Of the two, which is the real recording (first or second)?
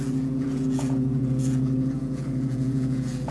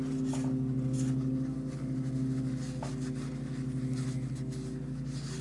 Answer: second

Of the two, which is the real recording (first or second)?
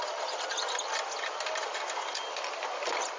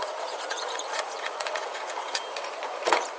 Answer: first